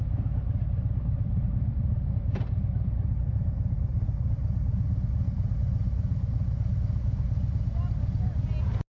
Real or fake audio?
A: real